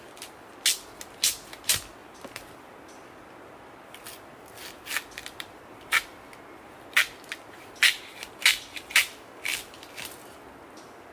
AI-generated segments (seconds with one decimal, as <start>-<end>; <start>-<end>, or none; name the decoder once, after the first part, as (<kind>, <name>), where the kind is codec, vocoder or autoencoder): 2.0-6.4 (vocoder, BigVGAN v2)